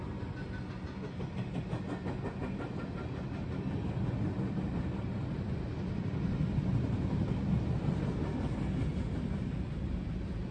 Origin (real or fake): real